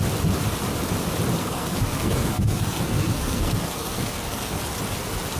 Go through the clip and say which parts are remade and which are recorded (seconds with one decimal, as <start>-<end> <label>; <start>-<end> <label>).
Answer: 0.0-1.4 recorded; 1.4-4.6 remade; 4.6-5.4 recorded